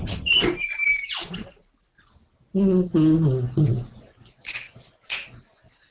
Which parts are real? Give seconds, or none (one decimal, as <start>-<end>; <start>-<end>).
0.0-0.4; 2.5-5.9